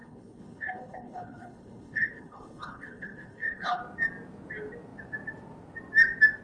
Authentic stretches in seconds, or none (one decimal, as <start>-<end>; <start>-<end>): 3.8-6.4